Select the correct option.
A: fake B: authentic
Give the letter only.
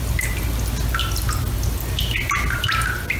B